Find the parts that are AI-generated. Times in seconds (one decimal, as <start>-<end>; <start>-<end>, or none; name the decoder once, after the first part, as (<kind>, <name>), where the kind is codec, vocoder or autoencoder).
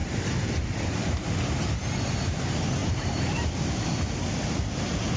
0.0-1.0 (vocoder, BigVGAN v2); 2.8-3.6